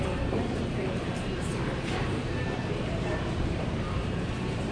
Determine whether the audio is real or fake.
fake